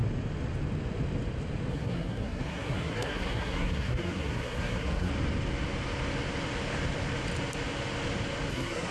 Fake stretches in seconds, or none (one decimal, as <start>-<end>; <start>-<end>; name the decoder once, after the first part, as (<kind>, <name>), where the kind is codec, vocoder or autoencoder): 1.7-5.1 (codec, SNAC); 8.5-8.9